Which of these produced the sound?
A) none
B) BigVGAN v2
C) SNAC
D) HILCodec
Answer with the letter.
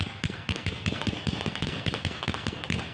C